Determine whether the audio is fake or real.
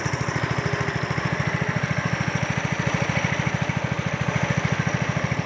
real